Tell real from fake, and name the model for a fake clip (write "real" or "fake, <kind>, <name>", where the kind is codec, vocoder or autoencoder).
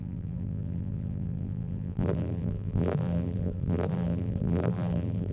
fake, vocoder, BigVGAN v2